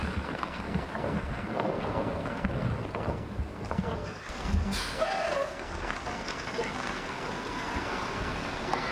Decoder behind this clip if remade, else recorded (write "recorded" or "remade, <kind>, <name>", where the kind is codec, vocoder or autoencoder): remade, codec, SNAC